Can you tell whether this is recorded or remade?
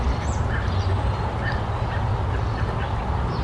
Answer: recorded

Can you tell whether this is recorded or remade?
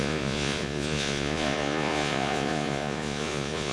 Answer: remade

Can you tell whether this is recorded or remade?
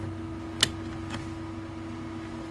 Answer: recorded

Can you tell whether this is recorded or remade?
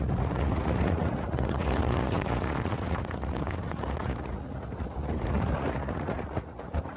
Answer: remade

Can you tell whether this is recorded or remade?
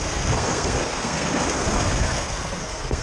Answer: remade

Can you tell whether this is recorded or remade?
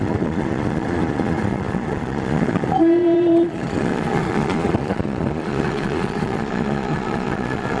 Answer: remade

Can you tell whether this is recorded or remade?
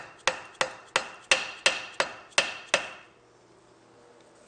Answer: recorded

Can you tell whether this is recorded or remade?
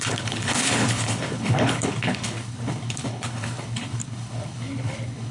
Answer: remade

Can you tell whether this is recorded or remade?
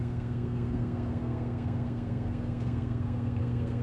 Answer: remade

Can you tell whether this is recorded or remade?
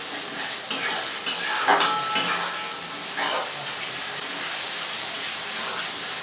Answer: recorded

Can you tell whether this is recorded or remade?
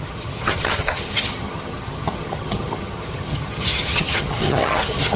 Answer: remade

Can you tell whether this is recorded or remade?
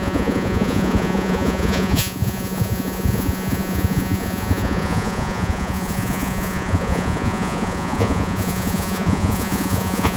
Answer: remade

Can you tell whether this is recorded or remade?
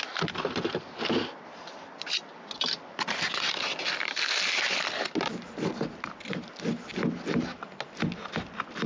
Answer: recorded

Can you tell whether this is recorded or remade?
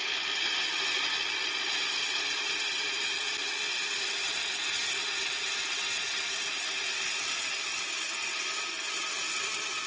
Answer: recorded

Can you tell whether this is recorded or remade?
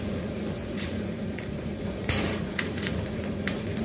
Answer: remade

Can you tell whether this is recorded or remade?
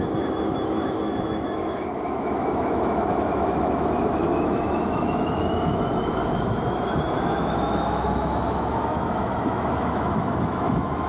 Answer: remade